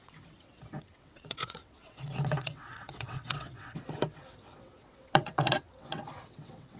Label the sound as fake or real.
fake